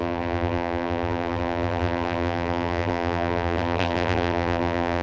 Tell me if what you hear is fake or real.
fake